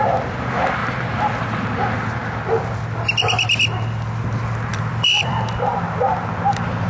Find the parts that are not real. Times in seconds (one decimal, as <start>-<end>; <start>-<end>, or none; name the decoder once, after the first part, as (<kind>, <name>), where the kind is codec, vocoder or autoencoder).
0.8-1.3 (vocoder, BigVGAN v2); 4.7-5.4